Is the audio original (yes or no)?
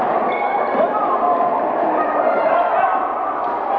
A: yes